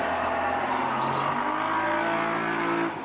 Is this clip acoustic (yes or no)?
yes